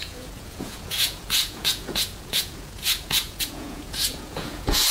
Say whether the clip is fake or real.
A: fake